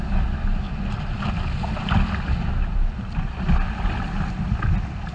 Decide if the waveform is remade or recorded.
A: recorded